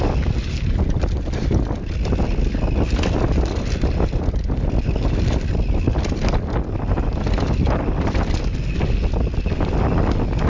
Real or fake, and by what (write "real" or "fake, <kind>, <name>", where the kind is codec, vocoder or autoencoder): real